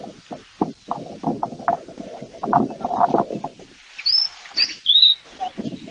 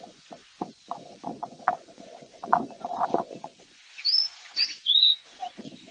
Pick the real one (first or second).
first